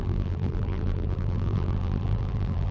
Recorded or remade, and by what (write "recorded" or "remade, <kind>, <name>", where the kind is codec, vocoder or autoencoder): remade, vocoder, BigVGAN v2